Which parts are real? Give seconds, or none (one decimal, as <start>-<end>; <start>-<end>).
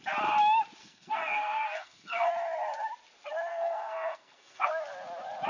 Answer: 0.0-0.8; 2.3-3.5; 4.7-5.5